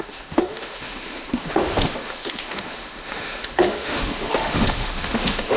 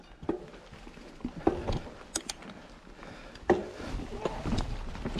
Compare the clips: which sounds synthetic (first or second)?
first